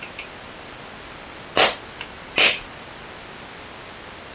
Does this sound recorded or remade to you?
recorded